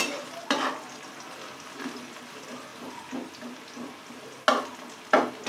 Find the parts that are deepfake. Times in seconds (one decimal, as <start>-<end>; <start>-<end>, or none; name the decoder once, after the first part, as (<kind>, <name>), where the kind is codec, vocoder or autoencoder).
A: none